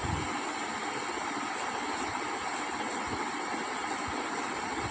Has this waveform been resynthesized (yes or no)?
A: no